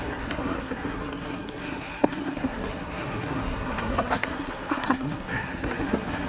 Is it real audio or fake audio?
fake